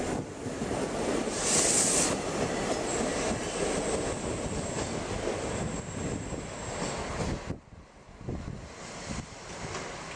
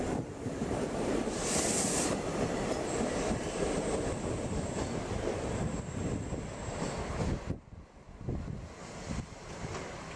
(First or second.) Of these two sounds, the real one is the first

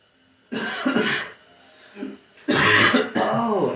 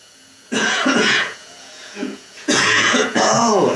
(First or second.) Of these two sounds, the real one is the first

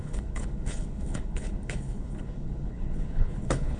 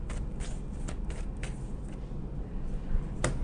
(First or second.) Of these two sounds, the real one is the second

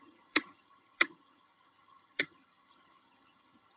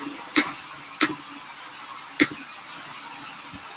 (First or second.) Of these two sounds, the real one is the second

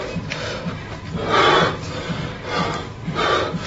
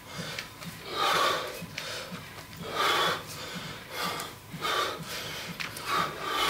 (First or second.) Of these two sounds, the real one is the first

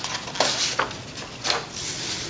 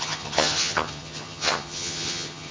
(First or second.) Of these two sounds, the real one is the first